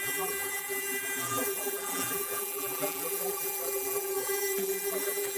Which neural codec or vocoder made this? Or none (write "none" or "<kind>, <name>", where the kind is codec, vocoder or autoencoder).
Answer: vocoder, BigVGAN v2